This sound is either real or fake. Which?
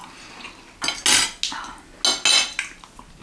real